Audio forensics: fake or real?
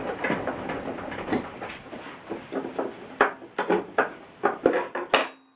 real